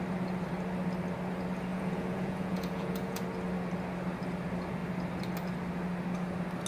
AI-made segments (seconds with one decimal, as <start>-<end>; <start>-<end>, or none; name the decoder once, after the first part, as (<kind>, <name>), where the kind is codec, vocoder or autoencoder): 1.7-3.2 (vocoder, Vocos)